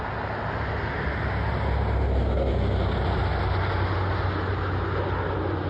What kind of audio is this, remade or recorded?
recorded